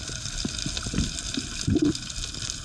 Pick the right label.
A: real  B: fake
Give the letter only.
A